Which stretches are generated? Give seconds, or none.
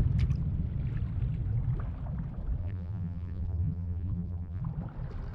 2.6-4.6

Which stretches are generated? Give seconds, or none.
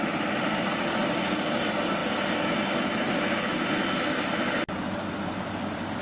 0.0-0.7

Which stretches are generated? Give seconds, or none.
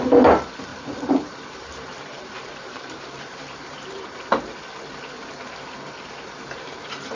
0.7-4.6; 5.3-7.2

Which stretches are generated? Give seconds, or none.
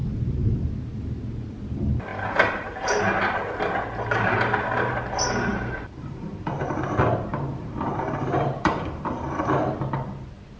0.0-0.7; 2.1-3.0; 5.5-6.6; 7.3-9.6